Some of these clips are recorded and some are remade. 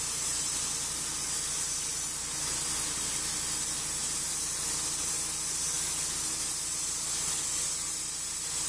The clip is recorded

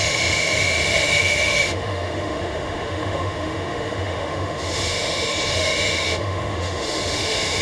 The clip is remade